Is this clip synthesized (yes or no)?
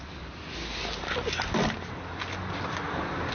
no